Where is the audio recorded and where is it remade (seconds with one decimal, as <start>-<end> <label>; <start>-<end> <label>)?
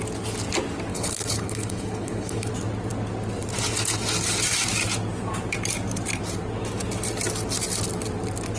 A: 0.0-0.9 recorded; 0.9-2.5 remade; 2.5-8.6 recorded